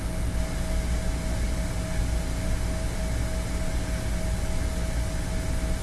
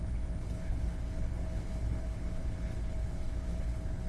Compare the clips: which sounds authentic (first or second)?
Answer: first